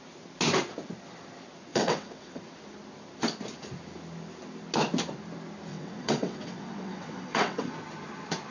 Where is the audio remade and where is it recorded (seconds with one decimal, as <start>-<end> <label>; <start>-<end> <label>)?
0.0-1.7 recorded; 1.7-2.4 remade; 2.4-5.7 recorded; 5.7-7.7 remade; 7.7-8.5 recorded